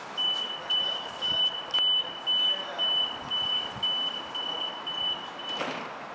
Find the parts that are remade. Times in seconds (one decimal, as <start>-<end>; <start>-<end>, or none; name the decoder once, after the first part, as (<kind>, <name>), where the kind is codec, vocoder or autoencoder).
none